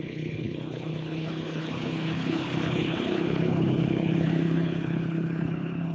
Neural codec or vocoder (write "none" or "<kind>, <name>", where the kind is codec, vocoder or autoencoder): codec, HILCodec